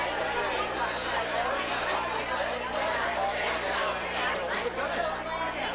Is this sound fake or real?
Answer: real